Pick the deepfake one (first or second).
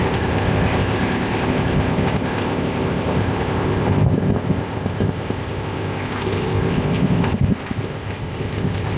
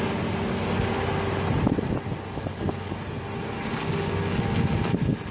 first